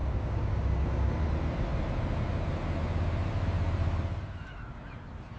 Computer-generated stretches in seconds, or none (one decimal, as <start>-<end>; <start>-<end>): 0.0-1.1